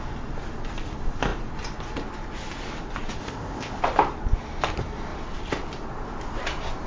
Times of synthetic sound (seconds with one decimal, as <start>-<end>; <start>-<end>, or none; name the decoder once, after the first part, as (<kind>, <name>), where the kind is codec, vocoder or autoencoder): 3.2-3.8 (codec, ZipCodec)